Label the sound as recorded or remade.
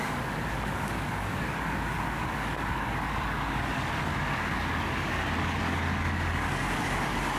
remade